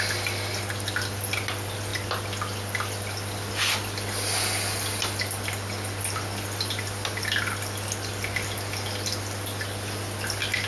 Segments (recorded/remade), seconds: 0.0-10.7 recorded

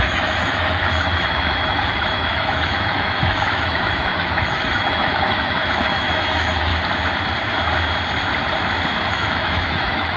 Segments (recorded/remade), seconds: 0.0-6.7 remade; 6.7-9.1 recorded; 9.1-10.2 remade

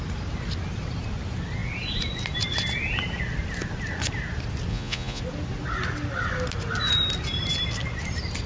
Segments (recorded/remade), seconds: 0.0-4.7 recorded; 4.7-5.2 remade; 5.2-8.5 recorded

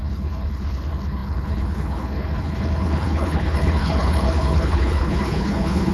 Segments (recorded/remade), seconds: 0.0-5.9 remade

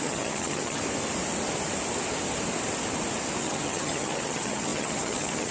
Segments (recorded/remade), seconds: 0.0-0.8 remade; 0.8-3.4 recorded; 3.4-5.5 remade

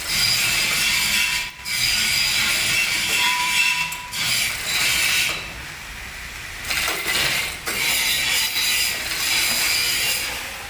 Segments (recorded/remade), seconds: 0.0-3.7 remade; 3.7-5.0 recorded; 5.0-10.7 remade